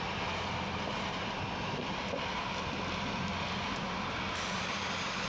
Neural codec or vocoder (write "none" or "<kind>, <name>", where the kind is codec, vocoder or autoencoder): none